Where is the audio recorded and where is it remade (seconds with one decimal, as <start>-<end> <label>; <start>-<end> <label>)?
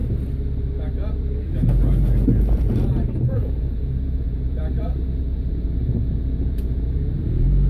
0.0-3.3 recorded; 3.3-4.6 remade; 4.6-5.2 recorded; 5.2-7.7 remade